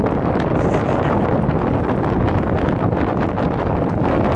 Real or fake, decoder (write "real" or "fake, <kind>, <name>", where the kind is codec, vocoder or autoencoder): real